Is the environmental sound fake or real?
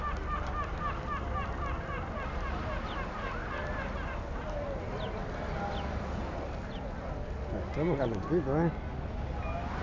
real